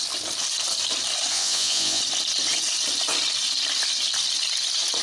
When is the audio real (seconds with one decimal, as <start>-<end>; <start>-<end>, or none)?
0.0-1.3; 2.0-5.0